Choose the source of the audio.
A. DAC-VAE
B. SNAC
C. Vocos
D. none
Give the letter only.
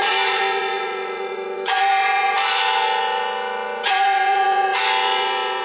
C